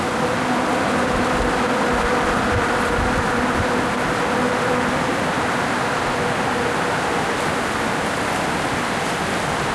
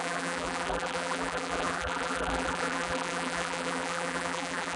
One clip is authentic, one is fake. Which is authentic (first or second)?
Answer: first